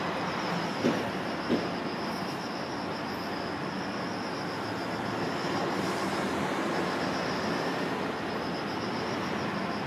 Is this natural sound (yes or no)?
yes